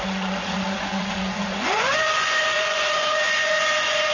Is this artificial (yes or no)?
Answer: yes